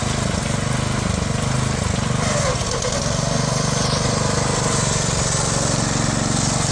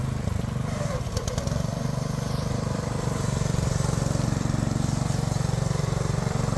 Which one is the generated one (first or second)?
second